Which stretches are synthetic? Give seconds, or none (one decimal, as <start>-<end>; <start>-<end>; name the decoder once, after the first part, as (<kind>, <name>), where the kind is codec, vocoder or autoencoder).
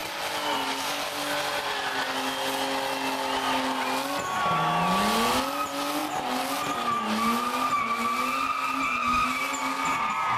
none